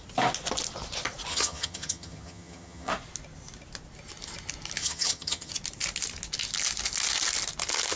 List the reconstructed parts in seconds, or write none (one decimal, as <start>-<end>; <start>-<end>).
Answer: 1.3-2.9; 4.8-5.5